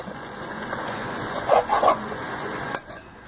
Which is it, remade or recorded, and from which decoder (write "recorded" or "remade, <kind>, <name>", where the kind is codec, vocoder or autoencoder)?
remade, vocoder, Vocos